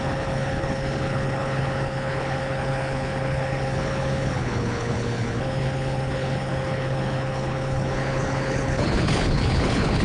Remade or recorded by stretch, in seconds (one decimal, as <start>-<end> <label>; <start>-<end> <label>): 0.0-10.0 remade